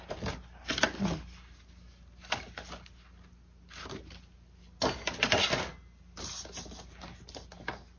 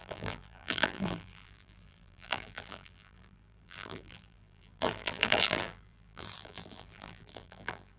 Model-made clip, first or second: second